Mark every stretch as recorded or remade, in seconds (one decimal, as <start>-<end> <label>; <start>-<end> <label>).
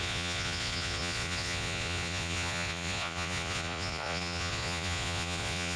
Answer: 0.0-5.8 remade